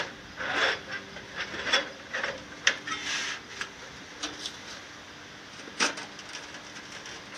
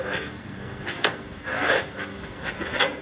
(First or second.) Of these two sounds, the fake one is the second